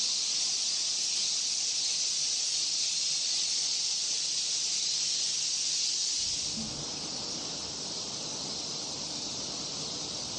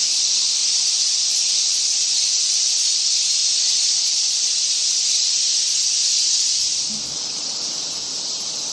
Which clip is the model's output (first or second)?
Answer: second